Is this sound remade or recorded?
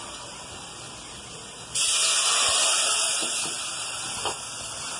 recorded